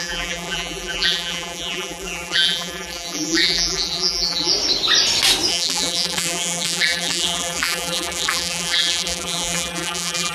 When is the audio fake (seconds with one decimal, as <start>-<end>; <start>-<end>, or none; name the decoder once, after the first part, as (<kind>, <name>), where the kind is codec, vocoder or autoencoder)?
0.0-4.5 (vocoder, BigVGAN v2); 5.5-10.3